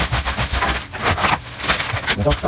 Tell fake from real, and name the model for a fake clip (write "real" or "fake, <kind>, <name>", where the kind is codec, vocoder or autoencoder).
real